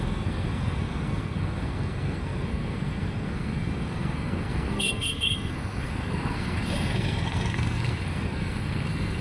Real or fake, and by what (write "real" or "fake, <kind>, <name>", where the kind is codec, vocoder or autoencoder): fake, codec, SNAC